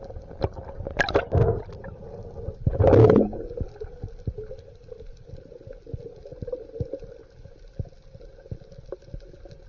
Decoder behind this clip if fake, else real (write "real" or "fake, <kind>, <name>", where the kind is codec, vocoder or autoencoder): real